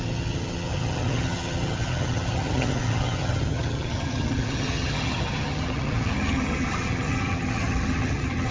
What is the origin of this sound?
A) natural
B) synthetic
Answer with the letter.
B